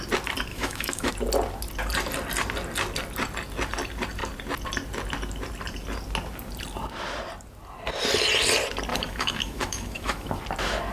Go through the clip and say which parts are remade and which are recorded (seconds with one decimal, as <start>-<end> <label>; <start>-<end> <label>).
0.0-0.5 recorded; 0.5-1.1 remade; 1.1-8.9 recorded; 8.9-10.4 remade; 10.4-10.9 recorded